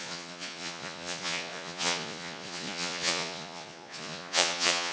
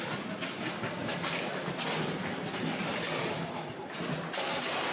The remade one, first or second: first